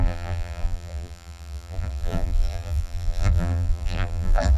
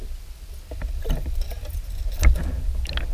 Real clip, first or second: second